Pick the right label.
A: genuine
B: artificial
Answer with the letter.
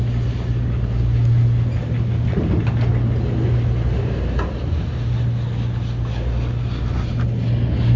A